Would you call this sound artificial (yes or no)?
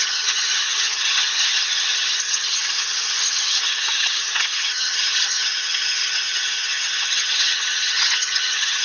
yes